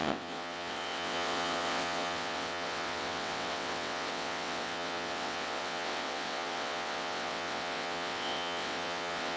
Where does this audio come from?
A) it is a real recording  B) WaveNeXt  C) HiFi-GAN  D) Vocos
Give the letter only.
B